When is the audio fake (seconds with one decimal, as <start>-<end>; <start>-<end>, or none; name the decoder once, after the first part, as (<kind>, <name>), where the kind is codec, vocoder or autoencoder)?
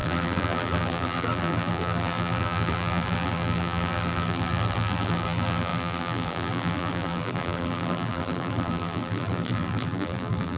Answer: 0.0-10.6 (vocoder, BigVGAN v2)